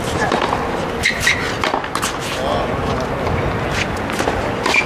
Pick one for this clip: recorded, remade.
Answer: recorded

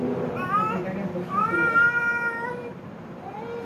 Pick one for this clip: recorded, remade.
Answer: recorded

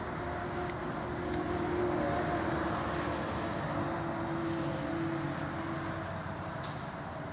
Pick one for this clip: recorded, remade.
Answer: recorded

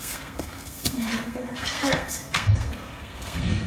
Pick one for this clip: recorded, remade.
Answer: remade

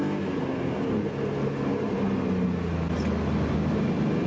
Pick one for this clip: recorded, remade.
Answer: recorded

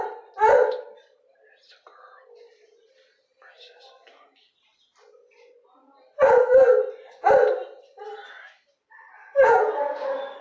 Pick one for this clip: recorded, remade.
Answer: recorded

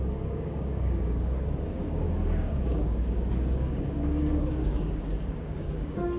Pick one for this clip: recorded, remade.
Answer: remade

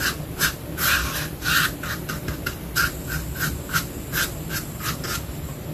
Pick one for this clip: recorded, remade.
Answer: recorded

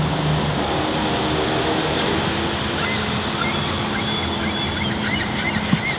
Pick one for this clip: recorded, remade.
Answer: recorded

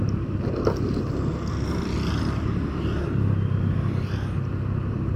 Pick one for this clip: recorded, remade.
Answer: recorded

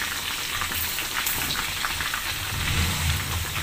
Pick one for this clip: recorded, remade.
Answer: recorded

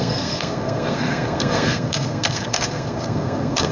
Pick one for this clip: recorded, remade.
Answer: remade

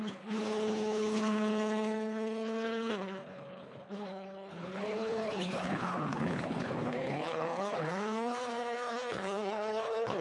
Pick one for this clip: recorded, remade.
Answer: remade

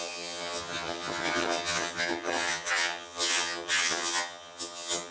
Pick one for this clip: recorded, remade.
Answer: remade